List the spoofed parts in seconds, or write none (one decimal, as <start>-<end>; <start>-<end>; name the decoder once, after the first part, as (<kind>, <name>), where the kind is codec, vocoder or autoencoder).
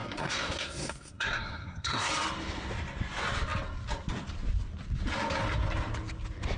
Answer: 0.0-2.1 (codec, SNAC)